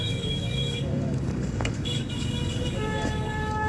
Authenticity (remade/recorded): remade